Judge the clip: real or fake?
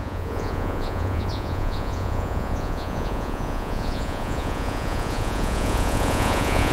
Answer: fake